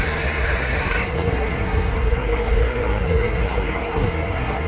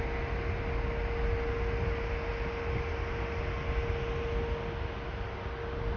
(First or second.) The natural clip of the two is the second